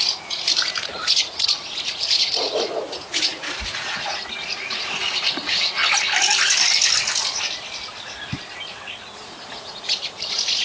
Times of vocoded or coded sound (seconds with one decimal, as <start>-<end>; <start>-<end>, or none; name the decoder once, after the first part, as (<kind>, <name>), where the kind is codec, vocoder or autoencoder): 0.0-5.8 (vocoder, Vocos); 9.4-10.6